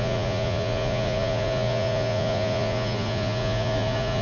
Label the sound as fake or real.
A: fake